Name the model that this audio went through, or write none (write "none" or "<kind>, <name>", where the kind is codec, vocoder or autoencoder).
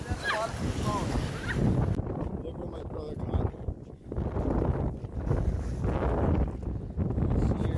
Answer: none